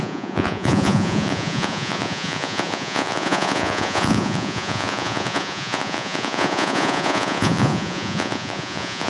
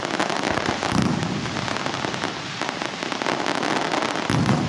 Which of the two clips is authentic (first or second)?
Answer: second